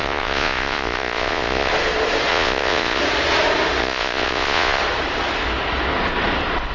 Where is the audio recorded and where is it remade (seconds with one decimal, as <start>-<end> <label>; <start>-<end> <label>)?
0.0-1.7 remade; 1.7-2.3 recorded; 2.3-3.0 remade; 3.0-3.8 recorded; 3.8-4.8 remade; 4.8-6.7 recorded